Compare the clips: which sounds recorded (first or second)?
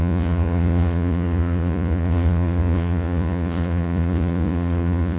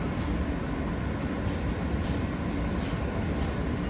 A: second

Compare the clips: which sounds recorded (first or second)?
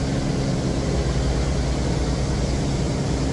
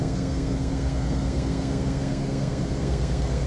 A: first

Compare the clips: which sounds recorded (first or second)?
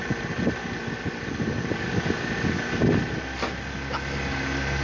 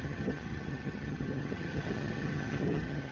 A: first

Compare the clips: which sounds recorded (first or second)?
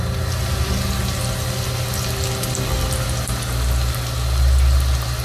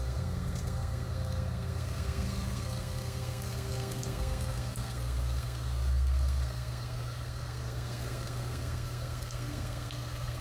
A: first